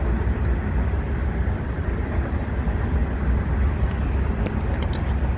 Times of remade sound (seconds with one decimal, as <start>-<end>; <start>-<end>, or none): 3.0-5.4